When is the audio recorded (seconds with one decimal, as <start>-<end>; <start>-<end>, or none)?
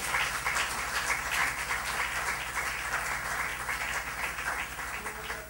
0.0-5.5